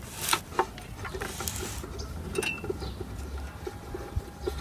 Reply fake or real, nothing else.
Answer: real